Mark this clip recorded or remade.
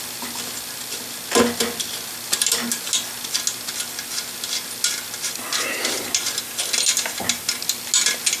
recorded